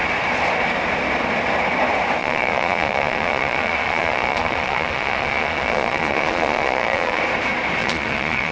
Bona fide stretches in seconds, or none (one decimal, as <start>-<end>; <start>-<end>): 0.0-2.2; 7.2-7.8